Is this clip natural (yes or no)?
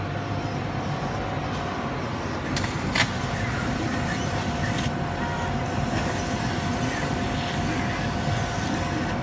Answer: yes